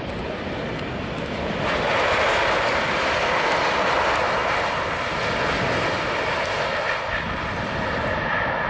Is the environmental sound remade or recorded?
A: recorded